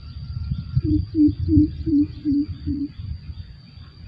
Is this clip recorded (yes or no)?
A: no